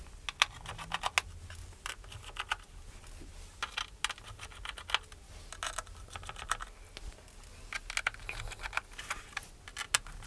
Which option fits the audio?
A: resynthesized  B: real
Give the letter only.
B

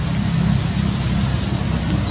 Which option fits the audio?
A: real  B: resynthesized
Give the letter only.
A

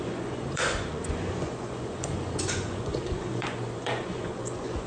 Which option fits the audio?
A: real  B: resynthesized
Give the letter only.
B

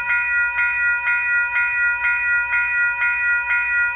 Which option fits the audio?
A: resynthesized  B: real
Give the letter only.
B